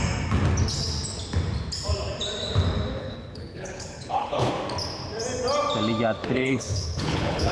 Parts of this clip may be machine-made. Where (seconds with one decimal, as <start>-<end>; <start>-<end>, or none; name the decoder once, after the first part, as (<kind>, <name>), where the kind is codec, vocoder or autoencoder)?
3.0-4.5 (codec, HILCodec); 6.2-7.5